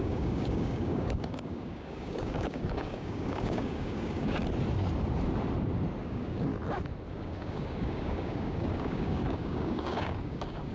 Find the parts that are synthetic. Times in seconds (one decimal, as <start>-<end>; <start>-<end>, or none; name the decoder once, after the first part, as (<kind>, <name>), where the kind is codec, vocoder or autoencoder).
0.0-4.4 (codec, DAC); 6.0-6.5; 7.1-10.7